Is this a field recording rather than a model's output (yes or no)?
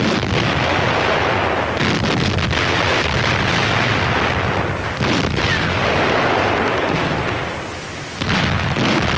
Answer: yes